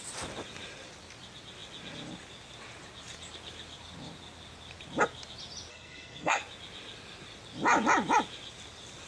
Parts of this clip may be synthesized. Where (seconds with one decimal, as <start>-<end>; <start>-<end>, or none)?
5.7-6.4